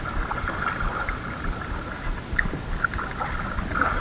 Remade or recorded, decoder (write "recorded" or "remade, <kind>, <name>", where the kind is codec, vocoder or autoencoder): recorded